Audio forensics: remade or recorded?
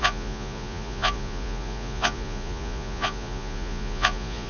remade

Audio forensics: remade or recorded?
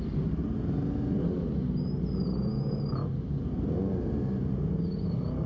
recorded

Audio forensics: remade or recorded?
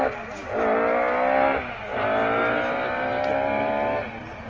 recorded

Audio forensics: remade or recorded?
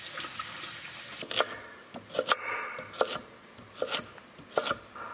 recorded